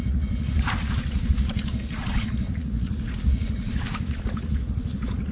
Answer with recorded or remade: remade